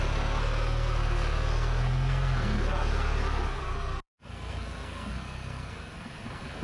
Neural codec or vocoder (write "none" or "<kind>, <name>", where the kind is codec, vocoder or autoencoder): codec, SNAC